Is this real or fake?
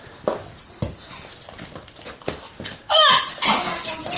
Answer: real